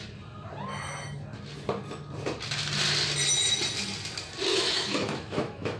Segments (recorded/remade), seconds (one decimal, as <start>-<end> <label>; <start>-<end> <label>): 0.0-4.5 recorded; 4.5-5.8 remade